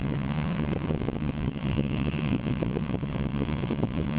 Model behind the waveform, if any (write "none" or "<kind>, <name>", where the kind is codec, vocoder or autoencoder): vocoder, WaveNeXt